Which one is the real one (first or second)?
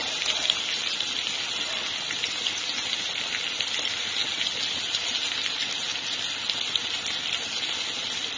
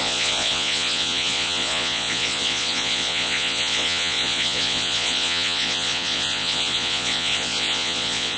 first